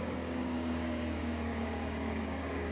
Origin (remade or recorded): remade